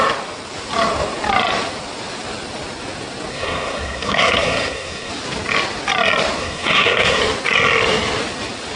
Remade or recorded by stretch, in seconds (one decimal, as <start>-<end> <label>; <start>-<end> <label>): 0.0-3.3 recorded; 3.3-5.1 remade; 5.1-6.4 recorded; 6.4-7.2 remade; 7.2-8.8 recorded